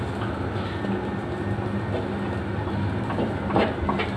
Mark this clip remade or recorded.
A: recorded